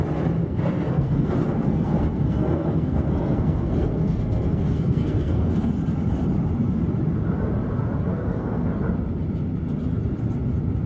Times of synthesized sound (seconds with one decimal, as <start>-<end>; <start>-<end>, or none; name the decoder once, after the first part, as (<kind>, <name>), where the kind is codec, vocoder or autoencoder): 0.4-5.7 (codec, SNAC); 8.1-8.7